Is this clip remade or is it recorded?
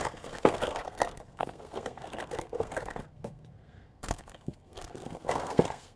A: remade